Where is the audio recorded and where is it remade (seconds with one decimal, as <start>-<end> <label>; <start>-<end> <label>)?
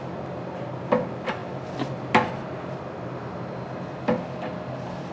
0.0-5.1 recorded